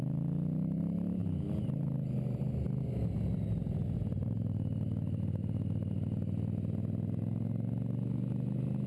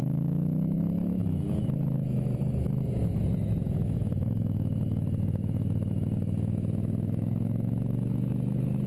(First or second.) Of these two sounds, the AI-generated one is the second